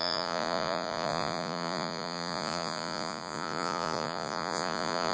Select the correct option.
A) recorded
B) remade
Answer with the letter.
B